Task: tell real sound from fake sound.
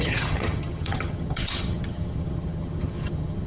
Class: fake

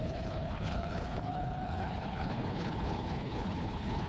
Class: fake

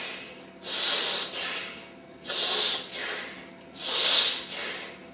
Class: real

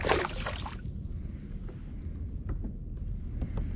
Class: real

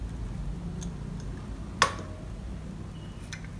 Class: real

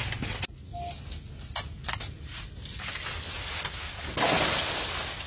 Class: real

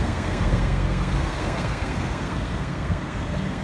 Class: fake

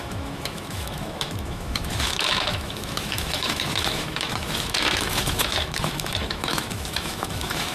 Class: fake